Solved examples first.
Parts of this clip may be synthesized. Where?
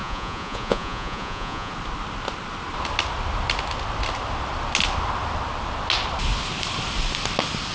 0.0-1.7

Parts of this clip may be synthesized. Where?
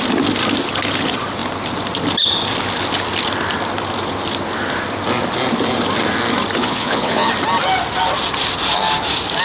6.6-7.3